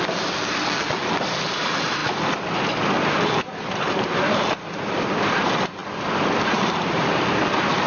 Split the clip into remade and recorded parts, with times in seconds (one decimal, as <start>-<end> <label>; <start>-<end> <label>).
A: 0.0-2.0 remade; 2.0-3.1 recorded; 3.1-5.8 remade; 5.8-6.4 recorded; 6.4-7.9 remade